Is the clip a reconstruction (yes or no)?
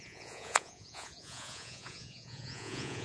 yes